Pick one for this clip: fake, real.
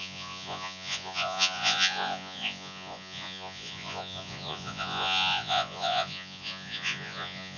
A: fake